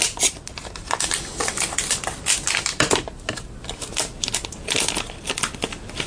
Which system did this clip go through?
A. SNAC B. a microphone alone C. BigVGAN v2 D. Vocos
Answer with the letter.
B